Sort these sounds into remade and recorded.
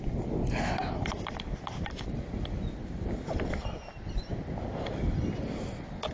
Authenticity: recorded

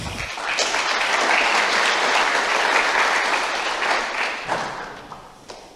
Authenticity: recorded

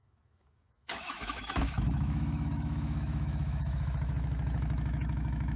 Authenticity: remade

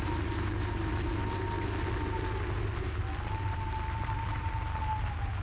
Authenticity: recorded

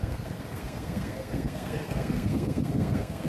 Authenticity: remade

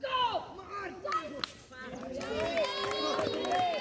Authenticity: recorded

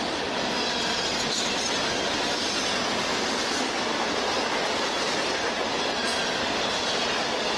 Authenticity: recorded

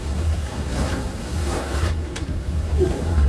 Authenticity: remade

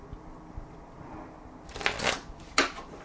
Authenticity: recorded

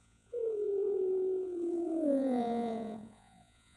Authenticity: remade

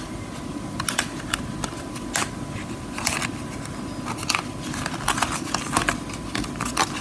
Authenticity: recorded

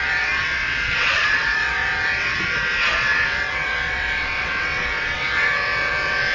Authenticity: remade